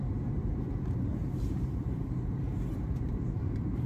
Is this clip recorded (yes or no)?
no